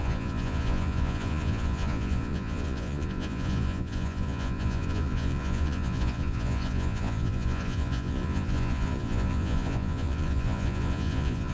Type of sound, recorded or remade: remade